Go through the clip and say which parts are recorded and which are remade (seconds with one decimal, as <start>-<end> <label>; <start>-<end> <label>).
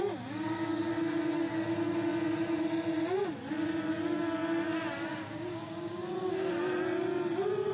0.0-5.1 recorded; 5.1-6.1 remade; 6.1-7.7 recorded